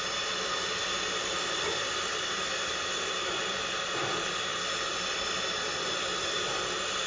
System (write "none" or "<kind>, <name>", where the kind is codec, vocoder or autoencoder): none